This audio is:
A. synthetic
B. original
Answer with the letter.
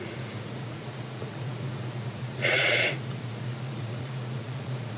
A